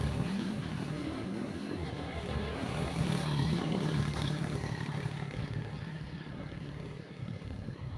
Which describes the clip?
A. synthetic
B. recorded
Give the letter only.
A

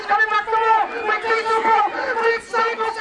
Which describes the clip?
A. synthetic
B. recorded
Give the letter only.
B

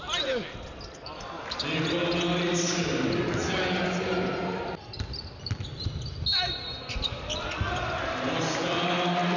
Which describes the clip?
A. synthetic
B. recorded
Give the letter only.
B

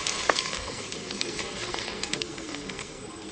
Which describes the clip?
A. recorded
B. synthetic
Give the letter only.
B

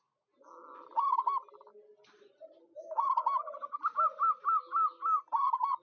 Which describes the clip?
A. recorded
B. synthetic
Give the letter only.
A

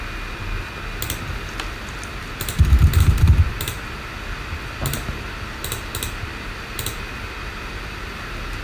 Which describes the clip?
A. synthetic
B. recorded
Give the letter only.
B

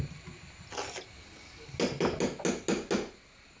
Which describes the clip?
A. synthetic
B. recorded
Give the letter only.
B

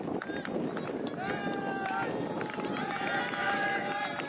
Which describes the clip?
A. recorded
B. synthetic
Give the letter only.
A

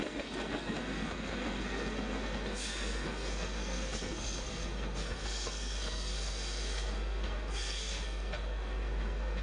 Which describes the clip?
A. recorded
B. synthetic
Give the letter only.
B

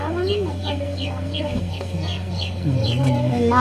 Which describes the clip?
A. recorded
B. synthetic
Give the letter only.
B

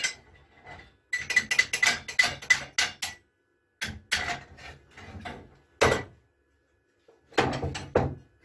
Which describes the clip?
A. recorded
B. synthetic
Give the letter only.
A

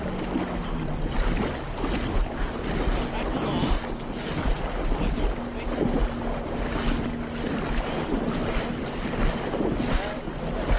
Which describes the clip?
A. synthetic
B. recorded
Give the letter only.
B